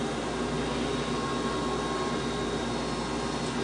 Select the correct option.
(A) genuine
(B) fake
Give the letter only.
A